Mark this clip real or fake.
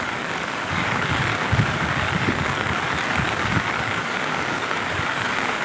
fake